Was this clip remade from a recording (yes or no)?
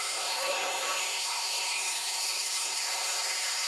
yes